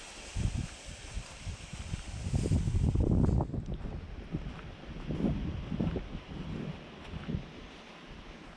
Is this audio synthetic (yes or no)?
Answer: no